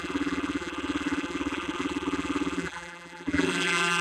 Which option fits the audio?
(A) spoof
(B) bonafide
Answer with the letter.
A